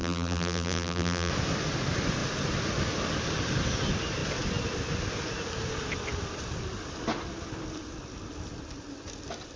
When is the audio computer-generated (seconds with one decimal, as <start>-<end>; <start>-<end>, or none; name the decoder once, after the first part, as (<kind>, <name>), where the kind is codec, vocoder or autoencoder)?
0.0-1.3 (vocoder, BigVGAN v2)